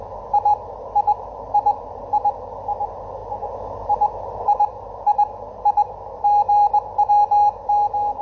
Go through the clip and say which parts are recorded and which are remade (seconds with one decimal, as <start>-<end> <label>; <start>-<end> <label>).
0.0-0.5 recorded; 0.5-2.4 remade; 2.4-3.2 recorded; 3.2-7.1 remade; 7.1-8.2 recorded